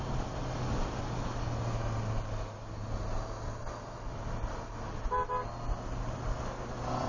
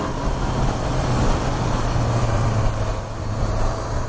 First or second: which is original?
first